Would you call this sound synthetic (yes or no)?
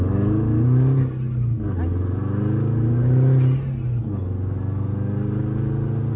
no